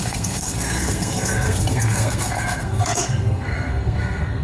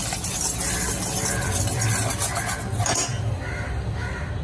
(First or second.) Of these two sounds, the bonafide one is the second